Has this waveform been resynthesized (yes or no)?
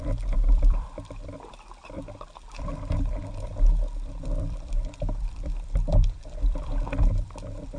yes